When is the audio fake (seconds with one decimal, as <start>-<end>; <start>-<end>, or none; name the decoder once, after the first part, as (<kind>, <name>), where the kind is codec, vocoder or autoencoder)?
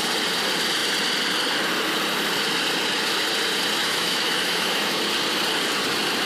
3.8-5.0 (autoencoder, DAC-VAE)